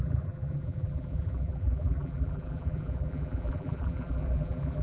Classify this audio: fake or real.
fake